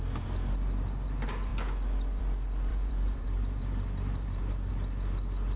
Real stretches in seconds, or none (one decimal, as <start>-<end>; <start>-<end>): 0.0-2.7; 4.7-5.6